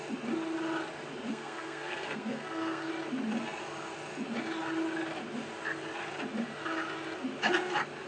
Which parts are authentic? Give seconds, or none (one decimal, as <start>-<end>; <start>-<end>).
0.0-1.3; 2.9-8.1